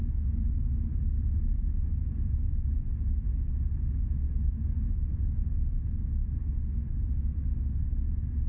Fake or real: real